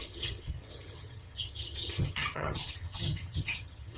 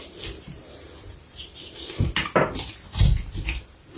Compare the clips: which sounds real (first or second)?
second